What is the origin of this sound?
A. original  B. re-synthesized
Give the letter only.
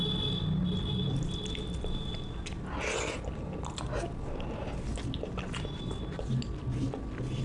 A